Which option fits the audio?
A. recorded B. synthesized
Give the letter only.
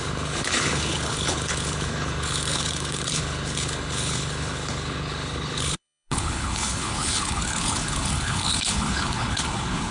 B